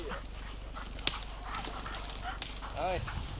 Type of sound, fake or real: real